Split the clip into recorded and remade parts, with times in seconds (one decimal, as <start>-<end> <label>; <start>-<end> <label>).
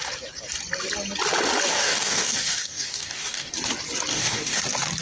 0.0-1.7 recorded; 1.7-3.5 remade; 3.5-4.1 recorded; 4.1-4.6 remade; 4.6-5.0 recorded